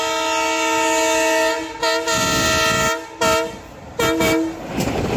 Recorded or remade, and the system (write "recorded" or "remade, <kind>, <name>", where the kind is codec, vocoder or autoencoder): recorded